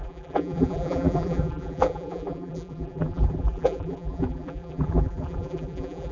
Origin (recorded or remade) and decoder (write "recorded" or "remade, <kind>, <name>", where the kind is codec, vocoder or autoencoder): remade, vocoder, BigVGAN v2